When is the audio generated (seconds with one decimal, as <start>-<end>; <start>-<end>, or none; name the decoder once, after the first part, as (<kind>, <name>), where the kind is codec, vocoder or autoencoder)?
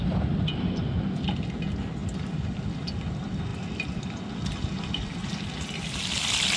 2.0-2.6 (vocoder, BigVGAN v2)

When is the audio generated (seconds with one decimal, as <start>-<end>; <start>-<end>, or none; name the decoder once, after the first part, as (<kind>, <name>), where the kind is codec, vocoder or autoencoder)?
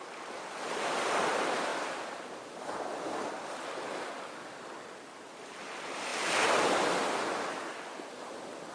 none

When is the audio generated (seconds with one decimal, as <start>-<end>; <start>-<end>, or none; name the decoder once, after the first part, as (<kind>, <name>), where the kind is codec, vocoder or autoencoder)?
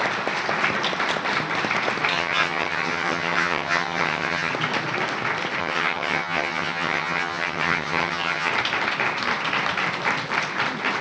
2.1-4.5 (vocoder, HiFi-GAN); 5.6-8.5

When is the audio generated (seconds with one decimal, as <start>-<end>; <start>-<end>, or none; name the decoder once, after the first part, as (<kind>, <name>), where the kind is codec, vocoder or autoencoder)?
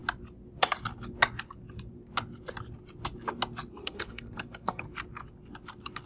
3.8-4.8 (codec, SNAC)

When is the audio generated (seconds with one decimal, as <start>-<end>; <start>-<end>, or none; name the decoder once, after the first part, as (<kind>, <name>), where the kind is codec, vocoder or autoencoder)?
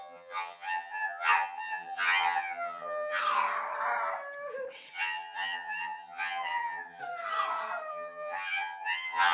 0.0-3.2 (vocoder, HiFi-GAN); 4.9-7.0; 7.9-9.3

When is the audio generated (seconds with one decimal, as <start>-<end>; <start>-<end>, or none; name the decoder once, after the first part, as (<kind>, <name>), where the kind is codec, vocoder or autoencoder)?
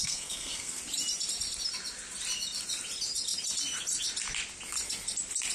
0.0-0.8 (codec, SNAC)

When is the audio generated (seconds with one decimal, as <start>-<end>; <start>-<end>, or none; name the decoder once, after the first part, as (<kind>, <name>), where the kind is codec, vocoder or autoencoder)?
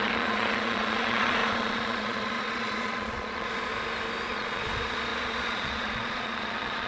0.0-3.7 (vocoder, Vocos); 4.3-6.9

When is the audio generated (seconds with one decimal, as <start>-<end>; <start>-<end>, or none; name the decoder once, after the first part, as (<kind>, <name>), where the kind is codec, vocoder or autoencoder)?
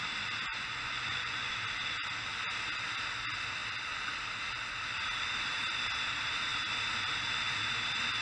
0.5-1.5 (vocoder, Vocos)